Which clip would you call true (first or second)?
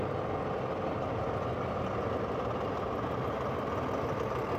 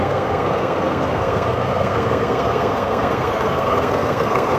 first